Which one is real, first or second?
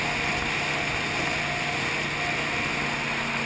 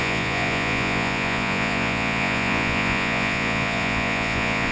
first